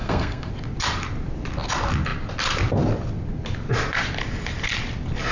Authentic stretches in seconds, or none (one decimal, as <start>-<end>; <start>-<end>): 0.5-5.3